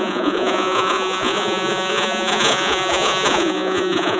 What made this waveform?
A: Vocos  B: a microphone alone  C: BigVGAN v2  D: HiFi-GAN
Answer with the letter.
A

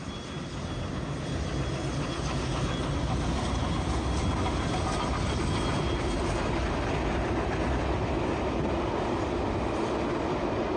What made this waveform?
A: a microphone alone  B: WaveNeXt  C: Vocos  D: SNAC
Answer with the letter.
A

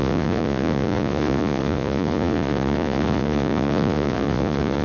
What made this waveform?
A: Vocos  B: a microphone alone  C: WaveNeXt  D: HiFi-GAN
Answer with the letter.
A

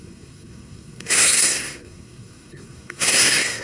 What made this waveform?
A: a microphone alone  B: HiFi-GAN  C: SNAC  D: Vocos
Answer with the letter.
C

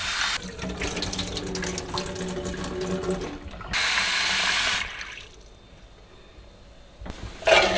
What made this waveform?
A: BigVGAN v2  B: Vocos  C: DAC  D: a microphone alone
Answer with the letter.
D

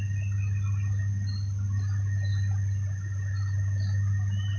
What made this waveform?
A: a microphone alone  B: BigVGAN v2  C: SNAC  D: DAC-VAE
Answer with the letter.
A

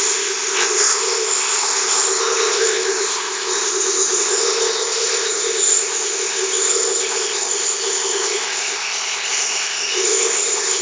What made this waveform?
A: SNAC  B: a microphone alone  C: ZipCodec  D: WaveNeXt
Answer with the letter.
C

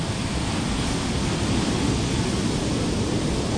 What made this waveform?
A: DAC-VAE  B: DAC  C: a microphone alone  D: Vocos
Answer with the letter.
C